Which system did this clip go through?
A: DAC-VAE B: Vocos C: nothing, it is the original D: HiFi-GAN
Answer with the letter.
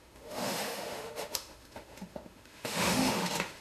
A